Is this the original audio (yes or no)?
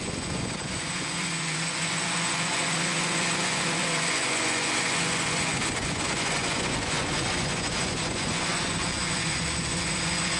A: no